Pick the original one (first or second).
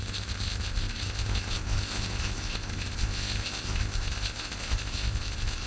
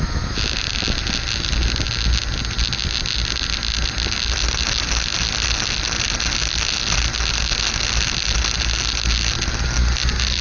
second